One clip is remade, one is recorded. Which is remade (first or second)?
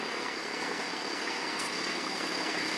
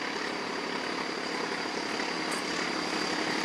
first